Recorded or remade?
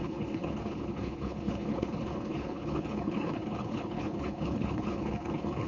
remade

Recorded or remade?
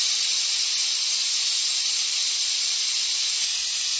recorded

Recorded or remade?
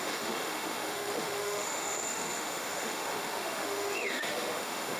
remade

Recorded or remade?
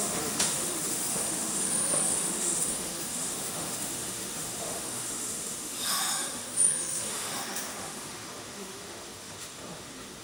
remade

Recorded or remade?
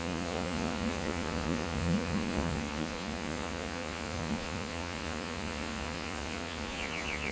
remade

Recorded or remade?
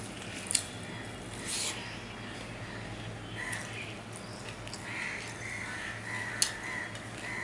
recorded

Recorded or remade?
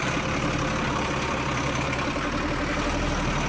recorded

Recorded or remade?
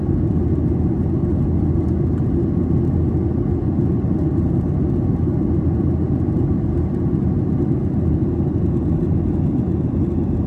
recorded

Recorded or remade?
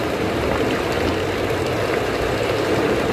recorded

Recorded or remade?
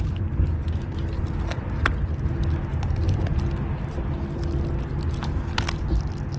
recorded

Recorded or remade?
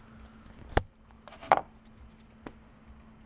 recorded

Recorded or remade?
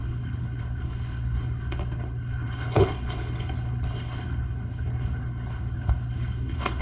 remade